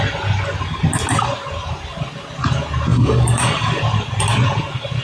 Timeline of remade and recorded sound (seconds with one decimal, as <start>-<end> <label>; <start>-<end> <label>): 0.0-2.9 recorded; 2.9-3.8 remade; 3.8-5.0 recorded